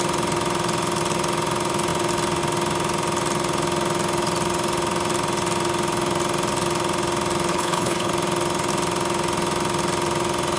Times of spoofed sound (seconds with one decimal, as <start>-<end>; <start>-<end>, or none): 7.5-8.1